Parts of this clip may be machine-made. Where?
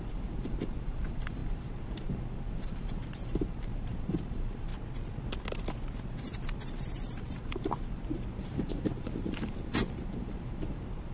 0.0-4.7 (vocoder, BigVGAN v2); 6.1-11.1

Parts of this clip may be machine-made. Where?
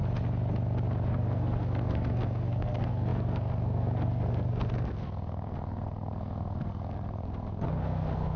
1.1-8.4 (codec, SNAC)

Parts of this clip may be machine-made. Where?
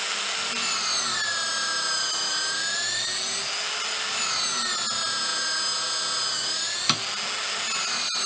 none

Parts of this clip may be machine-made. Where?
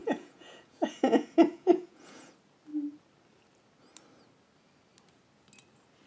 0.0-2.3 (vocoder, Vocos)